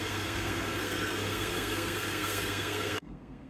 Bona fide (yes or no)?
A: no